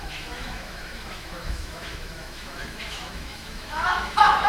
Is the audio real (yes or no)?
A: no